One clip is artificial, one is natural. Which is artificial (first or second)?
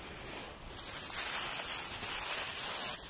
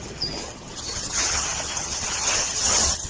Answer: second